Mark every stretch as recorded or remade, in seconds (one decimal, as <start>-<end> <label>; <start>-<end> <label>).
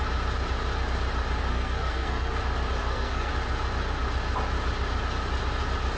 0.0-1.5 recorded; 1.5-2.3 remade; 2.3-2.8 recorded; 2.8-3.3 remade; 3.3-6.0 recorded